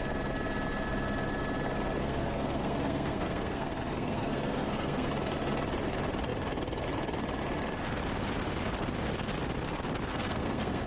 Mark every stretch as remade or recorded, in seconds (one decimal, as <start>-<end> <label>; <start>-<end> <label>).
0.0-2.0 recorded; 2.0-5.1 remade; 5.1-10.1 recorded; 10.1-10.9 remade